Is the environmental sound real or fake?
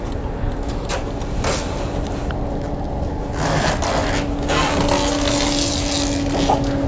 real